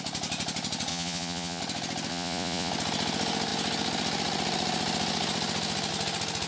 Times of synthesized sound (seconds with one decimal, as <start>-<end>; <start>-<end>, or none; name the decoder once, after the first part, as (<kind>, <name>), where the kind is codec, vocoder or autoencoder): 0.9-1.6 (vocoder, Vocos); 2.1-2.7